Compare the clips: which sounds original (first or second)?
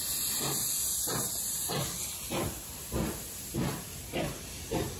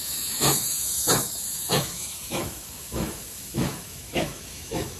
first